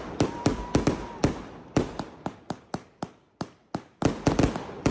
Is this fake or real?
real